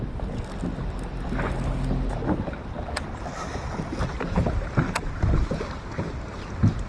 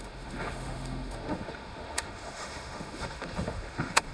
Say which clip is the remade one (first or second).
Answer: second